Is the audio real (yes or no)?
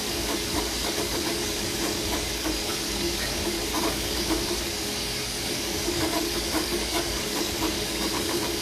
no